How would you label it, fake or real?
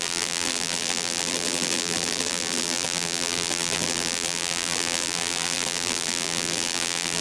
fake